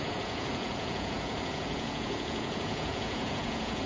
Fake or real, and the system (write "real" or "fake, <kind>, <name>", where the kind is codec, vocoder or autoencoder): fake, vocoder, Vocos